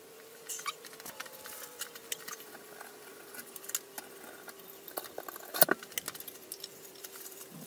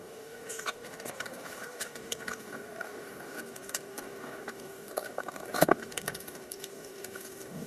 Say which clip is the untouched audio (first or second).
first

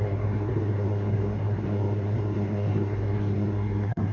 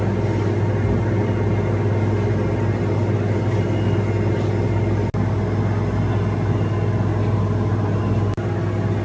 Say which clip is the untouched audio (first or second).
second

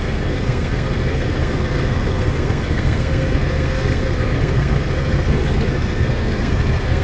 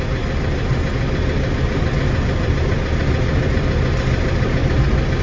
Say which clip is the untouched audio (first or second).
second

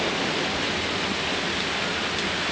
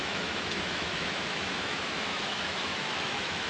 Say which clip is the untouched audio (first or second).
first